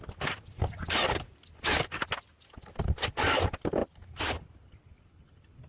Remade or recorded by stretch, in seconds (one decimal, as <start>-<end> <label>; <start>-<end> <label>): 0.0-5.7 recorded